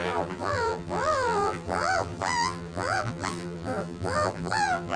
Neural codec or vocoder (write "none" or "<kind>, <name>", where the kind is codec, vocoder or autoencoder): vocoder, BigVGAN v2